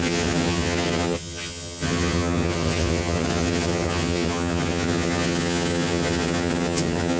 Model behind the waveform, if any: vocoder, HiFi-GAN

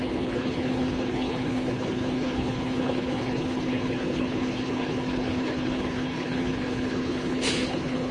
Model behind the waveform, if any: codec, HILCodec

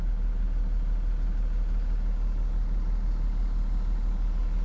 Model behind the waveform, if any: none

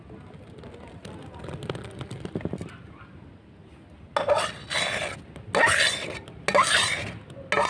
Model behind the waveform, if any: none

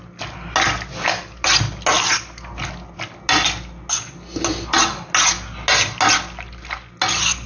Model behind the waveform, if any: none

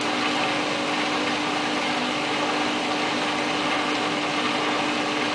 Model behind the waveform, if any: none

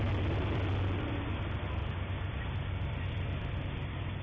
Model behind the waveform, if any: none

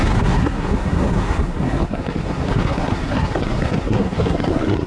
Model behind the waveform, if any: codec, SNAC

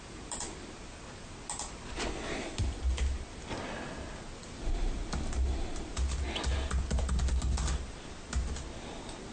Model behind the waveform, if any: none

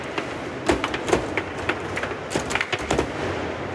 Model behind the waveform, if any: none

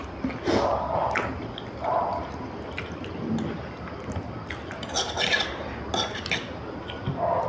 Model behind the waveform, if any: none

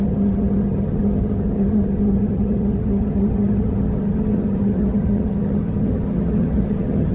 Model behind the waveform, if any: vocoder, HiFi-GAN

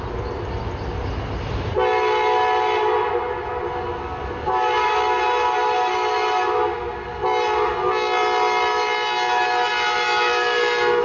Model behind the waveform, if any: none